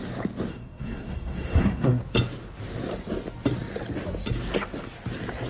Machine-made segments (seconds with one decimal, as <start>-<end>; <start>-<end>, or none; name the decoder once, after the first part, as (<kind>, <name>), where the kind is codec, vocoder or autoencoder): 0.5-2.0 (codec, SNAC)